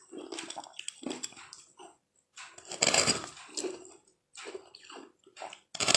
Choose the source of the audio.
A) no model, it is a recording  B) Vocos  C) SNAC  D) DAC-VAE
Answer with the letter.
A